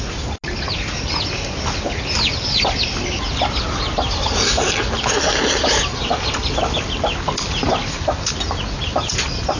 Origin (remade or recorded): recorded